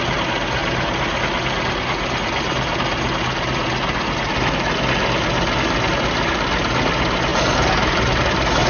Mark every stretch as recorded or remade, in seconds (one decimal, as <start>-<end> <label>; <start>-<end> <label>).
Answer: 0.0-8.7 recorded